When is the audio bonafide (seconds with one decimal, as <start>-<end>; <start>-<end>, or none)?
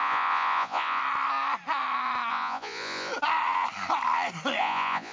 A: 1.0-2.3; 3.1-4.6